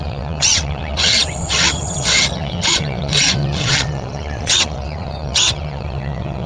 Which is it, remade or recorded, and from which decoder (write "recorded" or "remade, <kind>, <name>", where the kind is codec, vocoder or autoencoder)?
remade, vocoder, WaveNeXt